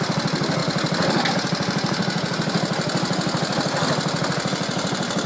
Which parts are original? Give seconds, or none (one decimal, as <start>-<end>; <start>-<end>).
0.6-1.3; 2.0-5.3